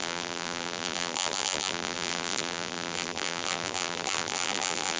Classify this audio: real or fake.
fake